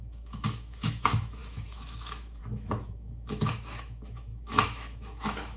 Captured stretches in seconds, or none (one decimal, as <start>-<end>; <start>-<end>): none